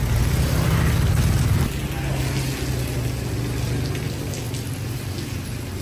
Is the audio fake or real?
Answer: real